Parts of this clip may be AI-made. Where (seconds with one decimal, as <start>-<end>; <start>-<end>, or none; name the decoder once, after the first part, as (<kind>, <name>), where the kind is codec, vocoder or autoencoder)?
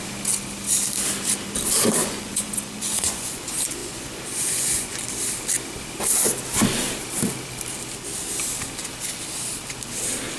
2.0-3.4 (vocoder, Vocos); 3.8-5.0